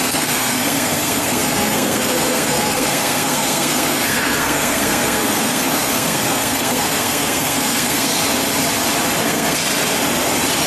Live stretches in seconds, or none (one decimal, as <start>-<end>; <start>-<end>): 8.1-9.2; 9.6-10.7